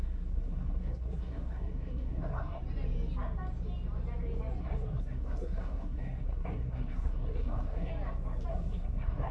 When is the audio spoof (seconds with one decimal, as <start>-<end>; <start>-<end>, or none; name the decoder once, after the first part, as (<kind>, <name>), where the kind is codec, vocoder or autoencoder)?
0.0-2.6 (codec, SNAC); 4.6-7.9; 8.5-9.3